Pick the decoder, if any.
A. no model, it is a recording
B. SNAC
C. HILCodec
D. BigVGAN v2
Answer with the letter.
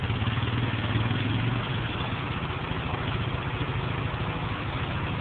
A